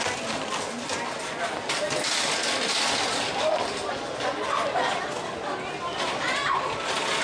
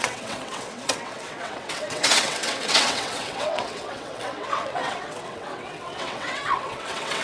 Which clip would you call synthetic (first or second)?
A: second